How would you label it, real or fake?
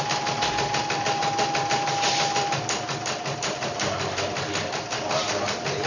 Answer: real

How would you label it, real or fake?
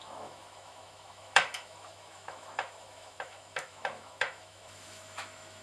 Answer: fake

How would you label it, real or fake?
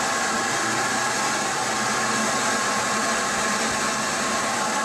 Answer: real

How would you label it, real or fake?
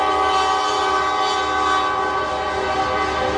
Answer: real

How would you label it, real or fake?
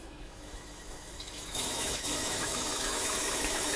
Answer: fake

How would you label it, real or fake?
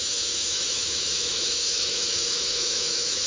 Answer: fake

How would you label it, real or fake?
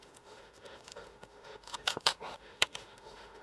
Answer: fake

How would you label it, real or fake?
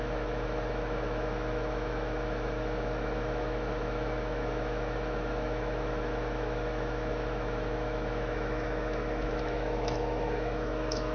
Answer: fake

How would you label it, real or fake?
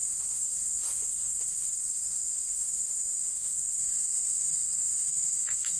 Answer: fake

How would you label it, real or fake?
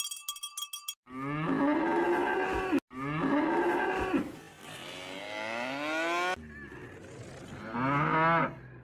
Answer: real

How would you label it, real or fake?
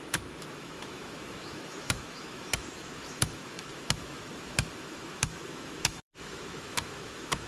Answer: fake